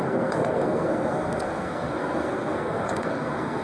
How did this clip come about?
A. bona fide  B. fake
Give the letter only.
B